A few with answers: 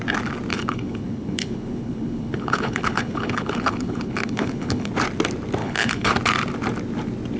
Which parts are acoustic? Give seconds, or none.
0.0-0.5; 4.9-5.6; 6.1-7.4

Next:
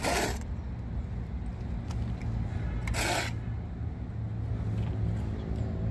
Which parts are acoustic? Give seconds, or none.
0.0-5.9

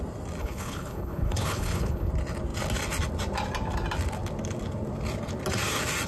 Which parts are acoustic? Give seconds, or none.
0.0-0.4; 2.1-6.1